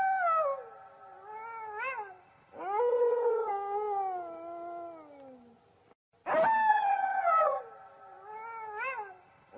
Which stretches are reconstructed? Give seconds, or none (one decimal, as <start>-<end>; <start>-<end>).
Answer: 2.9-3.5; 6.7-7.6

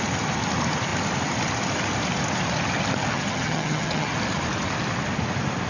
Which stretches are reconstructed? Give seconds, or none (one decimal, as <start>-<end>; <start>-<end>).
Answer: 3.1-4.1

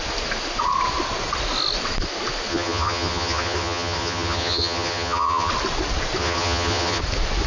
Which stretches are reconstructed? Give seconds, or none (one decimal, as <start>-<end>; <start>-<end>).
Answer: 2.5-5.5; 6.2-7.0

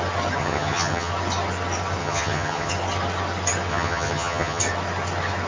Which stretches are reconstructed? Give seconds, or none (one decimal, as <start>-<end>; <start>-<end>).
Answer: 0.4-1.1; 2.0-2.7; 3.7-4.6